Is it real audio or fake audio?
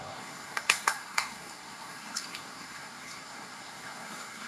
fake